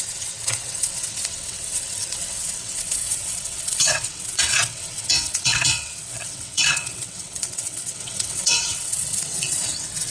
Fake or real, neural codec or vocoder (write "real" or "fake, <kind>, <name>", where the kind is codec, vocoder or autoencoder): fake, vocoder, WaveNeXt